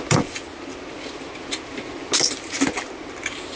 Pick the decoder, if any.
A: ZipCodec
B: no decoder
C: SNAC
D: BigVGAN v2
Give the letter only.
B